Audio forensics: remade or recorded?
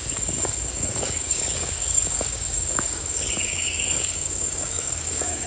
remade